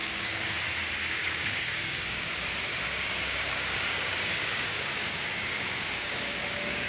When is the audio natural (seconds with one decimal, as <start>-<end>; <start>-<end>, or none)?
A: 0.6-1.0; 2.3-2.7